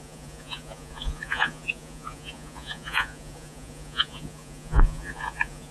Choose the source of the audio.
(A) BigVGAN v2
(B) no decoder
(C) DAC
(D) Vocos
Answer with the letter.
D